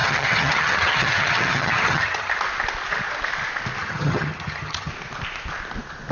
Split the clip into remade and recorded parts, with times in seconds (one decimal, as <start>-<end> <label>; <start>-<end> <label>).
0.0-2.3 remade; 2.3-3.8 recorded; 3.8-4.9 remade; 4.9-6.1 recorded